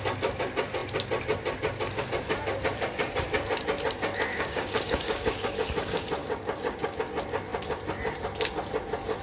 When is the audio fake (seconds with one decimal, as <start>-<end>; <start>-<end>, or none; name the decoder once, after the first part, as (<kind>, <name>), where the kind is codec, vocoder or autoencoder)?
4.3-5.5 (codec, DAC); 6.2-7.0